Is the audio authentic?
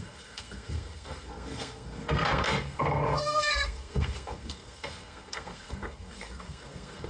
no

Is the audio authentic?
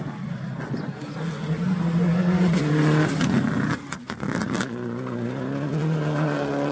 yes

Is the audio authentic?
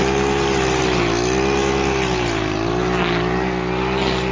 yes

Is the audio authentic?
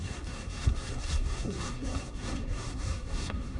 no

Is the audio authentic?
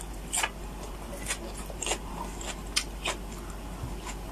yes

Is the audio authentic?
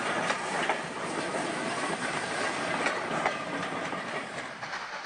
yes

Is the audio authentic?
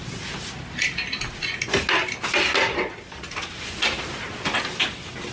yes